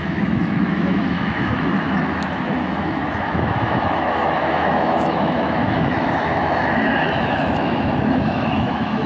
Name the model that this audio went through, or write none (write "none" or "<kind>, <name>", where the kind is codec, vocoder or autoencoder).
autoencoder, DAC-VAE